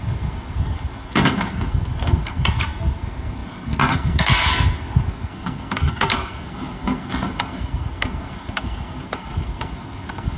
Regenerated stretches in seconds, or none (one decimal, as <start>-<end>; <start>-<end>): 0.0-10.4

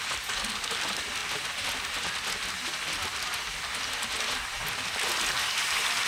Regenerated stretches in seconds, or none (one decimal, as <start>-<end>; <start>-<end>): none

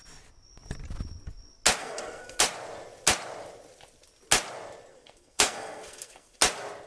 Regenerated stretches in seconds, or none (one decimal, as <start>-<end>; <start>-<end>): 1.8-2.4; 4.9-6.4

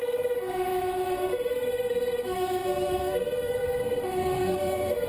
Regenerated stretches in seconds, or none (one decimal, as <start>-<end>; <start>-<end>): 0.0-5.1

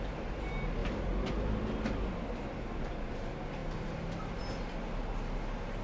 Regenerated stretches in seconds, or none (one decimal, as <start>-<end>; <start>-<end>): none

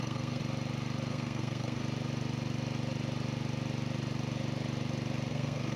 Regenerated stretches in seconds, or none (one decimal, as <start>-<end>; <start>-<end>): 0.0-0.4; 1.1-1.8; 5.3-5.8

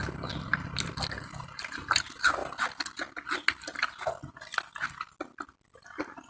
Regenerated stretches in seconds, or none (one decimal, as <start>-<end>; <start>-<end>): none

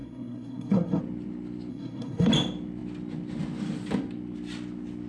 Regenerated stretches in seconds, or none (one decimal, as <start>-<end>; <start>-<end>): 0.0-1.0; 1.7-2.3